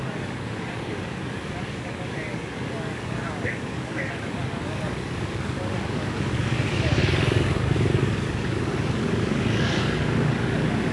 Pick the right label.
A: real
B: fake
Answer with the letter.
B